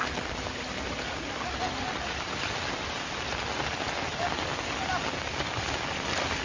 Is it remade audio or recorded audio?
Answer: recorded